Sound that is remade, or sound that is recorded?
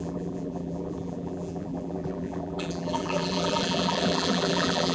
remade